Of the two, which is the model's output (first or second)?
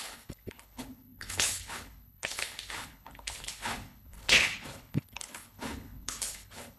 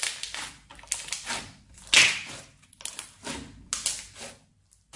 first